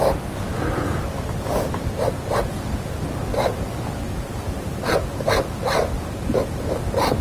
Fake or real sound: real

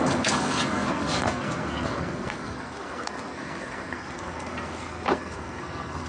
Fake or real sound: fake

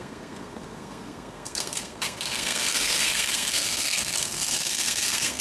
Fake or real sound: fake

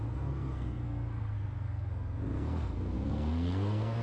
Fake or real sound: fake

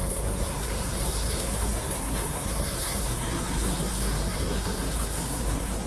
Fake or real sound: fake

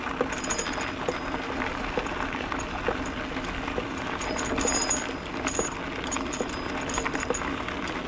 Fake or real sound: real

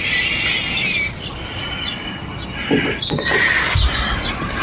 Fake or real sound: real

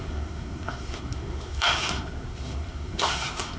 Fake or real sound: fake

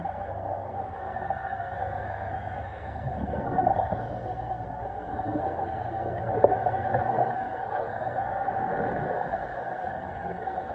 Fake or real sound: fake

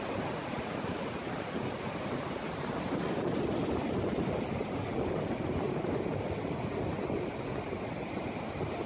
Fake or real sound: real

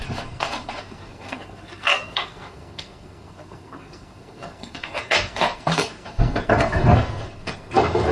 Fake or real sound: fake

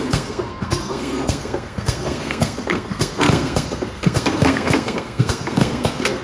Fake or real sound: fake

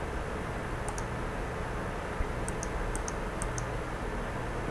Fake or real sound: real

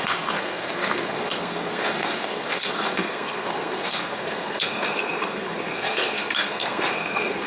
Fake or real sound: fake